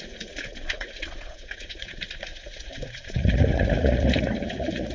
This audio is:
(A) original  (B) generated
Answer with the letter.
B